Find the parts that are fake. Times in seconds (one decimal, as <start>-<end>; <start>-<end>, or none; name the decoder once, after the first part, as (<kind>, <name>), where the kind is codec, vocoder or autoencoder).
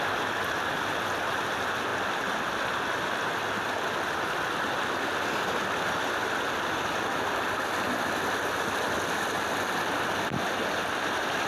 none